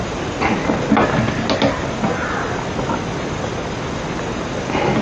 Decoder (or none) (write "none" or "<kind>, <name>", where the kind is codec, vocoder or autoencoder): none